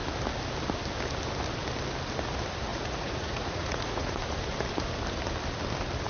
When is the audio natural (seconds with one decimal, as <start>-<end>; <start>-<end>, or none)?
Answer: 0.0-2.7; 4.2-6.1